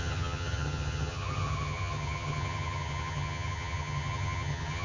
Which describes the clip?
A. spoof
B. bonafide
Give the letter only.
A